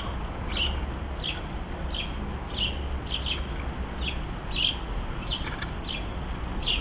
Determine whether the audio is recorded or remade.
recorded